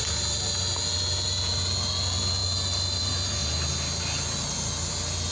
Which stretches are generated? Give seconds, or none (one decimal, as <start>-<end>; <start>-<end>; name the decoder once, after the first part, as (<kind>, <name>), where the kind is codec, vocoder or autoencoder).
none